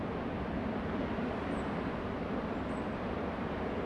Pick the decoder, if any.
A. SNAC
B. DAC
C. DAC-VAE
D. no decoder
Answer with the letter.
D